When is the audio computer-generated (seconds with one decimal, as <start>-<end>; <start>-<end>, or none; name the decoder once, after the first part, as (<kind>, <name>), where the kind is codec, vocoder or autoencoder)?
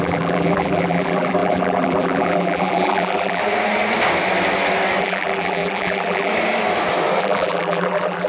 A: 0.0-3.4 (vocoder, BigVGAN v2); 5.0-6.3; 7.2-8.3